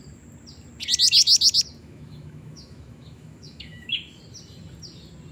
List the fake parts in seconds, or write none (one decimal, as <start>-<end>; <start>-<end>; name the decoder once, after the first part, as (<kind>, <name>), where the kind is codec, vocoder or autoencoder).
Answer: 1.8-4.2 (autoencoder, DAC-VAE)